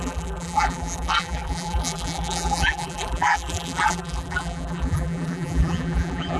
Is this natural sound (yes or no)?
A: no